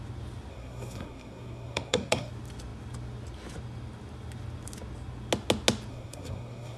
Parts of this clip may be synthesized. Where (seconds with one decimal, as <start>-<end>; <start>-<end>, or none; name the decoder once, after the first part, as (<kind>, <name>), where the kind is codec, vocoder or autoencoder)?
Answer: 0.5-2.3 (codec, SNAC); 5.9-6.8